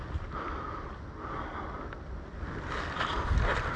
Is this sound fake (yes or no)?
no